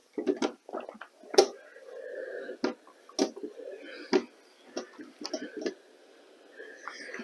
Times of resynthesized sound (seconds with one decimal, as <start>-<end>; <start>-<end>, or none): none